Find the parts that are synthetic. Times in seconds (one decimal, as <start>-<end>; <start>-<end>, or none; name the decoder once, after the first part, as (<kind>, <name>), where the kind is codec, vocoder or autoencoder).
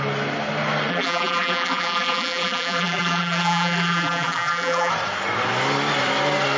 0.9-4.9 (vocoder, BigVGAN v2)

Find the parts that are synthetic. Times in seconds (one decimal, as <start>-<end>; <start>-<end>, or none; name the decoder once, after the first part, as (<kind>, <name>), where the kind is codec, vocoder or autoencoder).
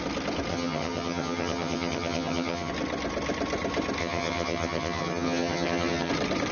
0.5-2.7 (vocoder, HiFi-GAN); 4.0-6.1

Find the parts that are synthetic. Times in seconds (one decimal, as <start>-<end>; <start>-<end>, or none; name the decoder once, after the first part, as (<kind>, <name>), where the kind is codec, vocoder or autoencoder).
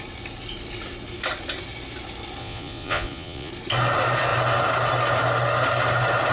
2.4-3.5 (vocoder, Vocos)